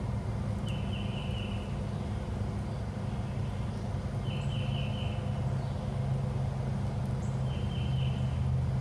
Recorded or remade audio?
recorded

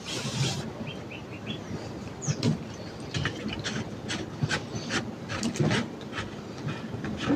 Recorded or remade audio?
recorded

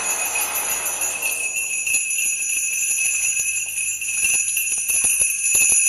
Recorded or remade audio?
recorded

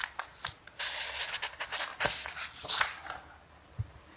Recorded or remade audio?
recorded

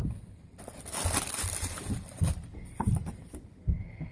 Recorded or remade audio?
remade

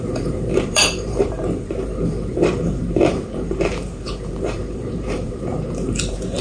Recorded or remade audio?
remade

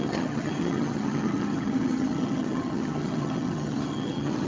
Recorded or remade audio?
remade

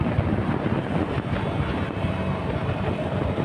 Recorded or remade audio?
recorded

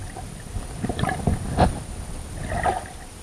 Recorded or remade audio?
recorded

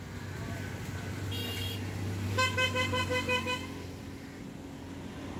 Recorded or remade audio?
recorded